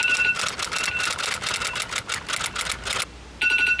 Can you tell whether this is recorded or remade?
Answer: recorded